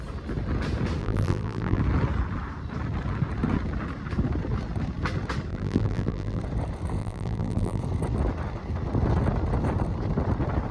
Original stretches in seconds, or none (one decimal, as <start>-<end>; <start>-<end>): 0.0-1.0; 1.8-5.5; 6.4-7.0; 7.8-10.7